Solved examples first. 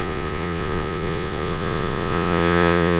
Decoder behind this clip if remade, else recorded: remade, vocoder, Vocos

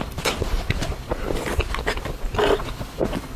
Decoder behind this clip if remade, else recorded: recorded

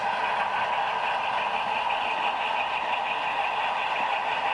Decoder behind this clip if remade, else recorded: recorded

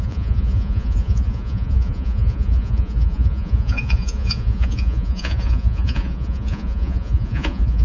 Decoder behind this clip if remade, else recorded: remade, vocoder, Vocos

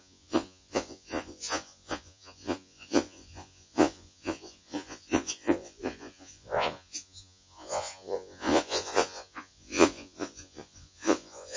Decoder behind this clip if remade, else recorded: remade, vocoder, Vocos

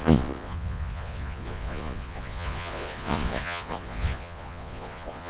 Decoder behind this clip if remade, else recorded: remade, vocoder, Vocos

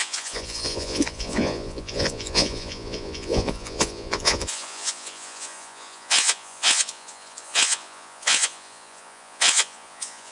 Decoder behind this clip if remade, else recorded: remade, vocoder, Vocos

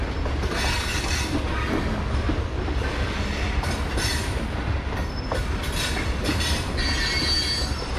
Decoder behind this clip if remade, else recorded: recorded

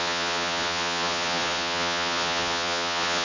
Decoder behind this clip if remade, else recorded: remade, vocoder, Vocos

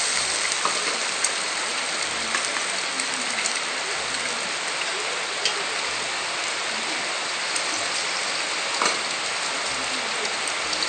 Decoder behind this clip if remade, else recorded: recorded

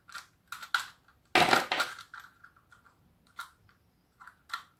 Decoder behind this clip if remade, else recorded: recorded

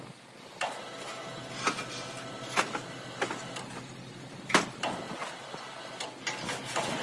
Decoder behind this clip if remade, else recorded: recorded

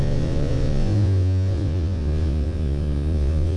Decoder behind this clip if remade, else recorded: remade, vocoder, Vocos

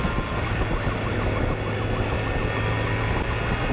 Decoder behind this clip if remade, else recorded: recorded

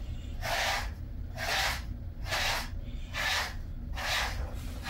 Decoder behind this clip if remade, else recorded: recorded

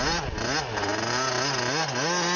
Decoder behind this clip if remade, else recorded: recorded